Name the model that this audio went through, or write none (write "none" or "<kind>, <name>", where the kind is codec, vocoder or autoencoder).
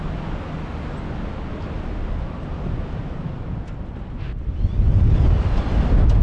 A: none